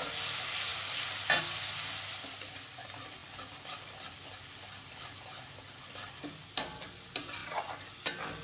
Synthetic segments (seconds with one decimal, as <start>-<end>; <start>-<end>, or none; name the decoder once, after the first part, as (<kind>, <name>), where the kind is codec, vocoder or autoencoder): none